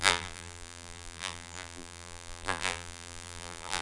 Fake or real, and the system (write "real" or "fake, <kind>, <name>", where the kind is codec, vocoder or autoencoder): fake, vocoder, BigVGAN v2